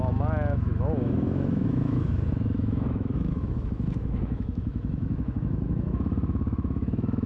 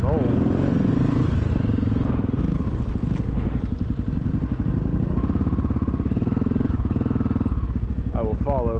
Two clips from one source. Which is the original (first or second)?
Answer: second